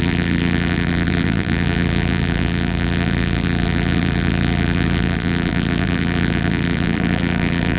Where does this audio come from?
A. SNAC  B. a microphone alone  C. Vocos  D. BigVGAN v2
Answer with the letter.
D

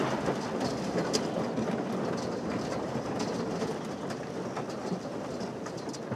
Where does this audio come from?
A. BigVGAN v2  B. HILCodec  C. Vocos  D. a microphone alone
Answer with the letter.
D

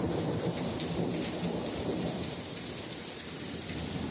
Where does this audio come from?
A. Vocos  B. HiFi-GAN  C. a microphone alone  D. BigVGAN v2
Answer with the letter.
D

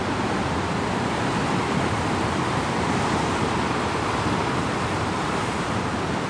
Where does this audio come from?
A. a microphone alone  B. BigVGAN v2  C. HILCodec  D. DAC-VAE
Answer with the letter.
B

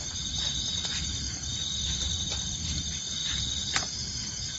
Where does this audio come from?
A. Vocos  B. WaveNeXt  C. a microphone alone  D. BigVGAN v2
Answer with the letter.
D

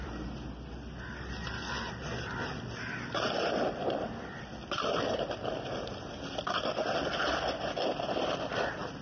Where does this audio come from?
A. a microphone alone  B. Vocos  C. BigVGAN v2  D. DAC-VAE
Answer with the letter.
C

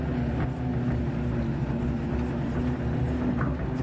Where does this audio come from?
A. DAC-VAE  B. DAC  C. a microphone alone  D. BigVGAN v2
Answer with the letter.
C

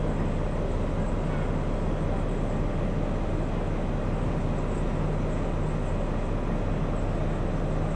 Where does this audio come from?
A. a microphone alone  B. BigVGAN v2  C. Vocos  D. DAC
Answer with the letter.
A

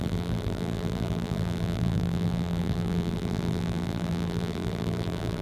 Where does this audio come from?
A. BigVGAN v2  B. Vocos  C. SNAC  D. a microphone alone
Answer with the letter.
A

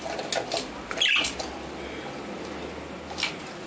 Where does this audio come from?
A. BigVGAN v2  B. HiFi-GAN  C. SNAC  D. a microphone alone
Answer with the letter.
D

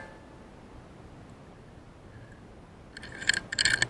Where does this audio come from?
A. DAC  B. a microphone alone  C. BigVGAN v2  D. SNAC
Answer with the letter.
B